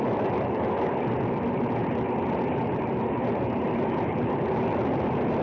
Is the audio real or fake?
real